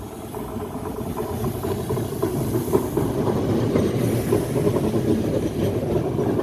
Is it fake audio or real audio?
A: fake